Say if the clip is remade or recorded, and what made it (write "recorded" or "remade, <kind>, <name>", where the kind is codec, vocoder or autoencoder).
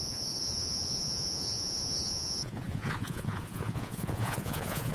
remade, vocoder, Vocos